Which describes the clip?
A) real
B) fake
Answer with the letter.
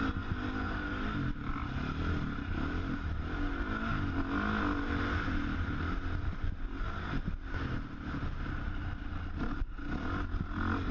A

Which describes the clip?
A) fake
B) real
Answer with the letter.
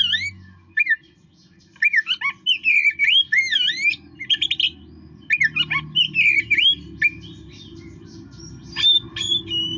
B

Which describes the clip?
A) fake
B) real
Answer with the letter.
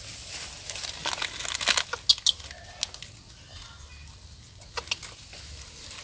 B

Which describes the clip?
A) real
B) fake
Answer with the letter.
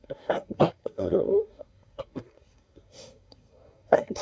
B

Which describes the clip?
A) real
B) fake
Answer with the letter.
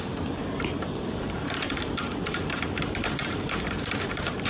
B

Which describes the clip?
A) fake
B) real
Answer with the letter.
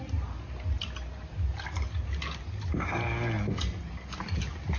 B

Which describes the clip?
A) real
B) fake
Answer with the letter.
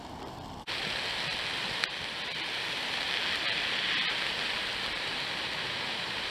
A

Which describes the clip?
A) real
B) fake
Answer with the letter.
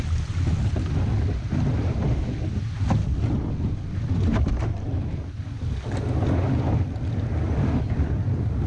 A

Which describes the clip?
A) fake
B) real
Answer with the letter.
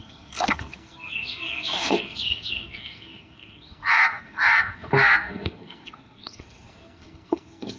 A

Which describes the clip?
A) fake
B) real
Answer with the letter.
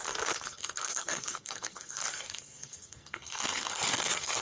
A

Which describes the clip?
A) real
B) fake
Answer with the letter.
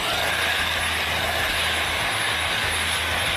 A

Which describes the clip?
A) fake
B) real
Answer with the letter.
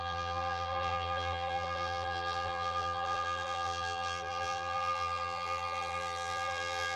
A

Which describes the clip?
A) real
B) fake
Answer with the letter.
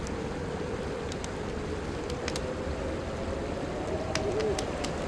A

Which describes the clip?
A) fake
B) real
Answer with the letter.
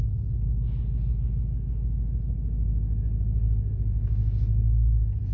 B